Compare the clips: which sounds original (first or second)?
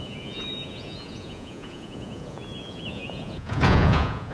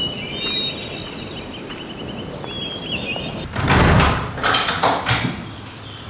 second